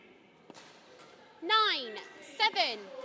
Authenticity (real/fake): fake